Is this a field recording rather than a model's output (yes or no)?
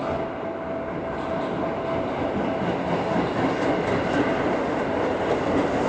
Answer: yes